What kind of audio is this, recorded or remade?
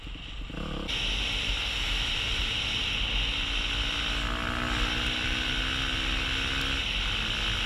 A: recorded